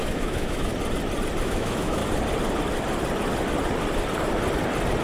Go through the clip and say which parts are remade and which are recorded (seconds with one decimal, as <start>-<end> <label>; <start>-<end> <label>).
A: 0.0-0.7 remade; 0.7-1.4 recorded; 1.4-2.0 remade; 2.0-5.0 recorded